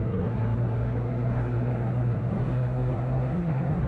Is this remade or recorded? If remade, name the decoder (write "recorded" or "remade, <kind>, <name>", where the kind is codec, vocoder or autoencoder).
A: remade, codec, SNAC